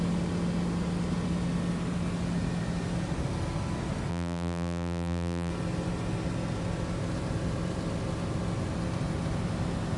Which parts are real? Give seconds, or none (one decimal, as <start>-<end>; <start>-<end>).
0.0-4.1; 5.5-10.0